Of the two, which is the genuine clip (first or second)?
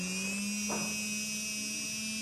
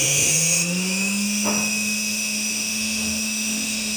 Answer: first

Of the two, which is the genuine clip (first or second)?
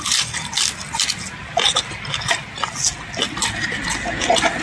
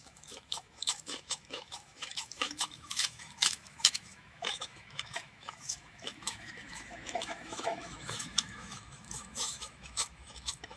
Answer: first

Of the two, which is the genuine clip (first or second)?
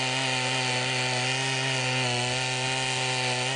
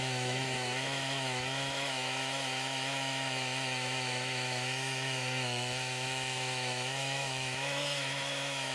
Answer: first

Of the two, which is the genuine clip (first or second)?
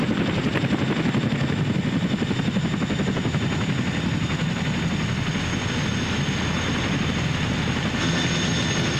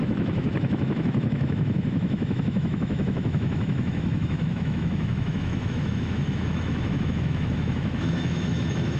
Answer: first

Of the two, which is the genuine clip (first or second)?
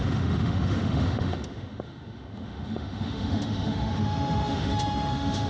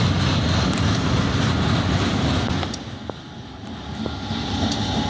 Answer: second